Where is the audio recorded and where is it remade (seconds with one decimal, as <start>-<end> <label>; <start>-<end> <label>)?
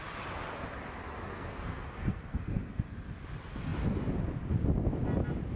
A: 0.0-1.3 recorded; 1.3-2.9 remade; 2.9-5.6 recorded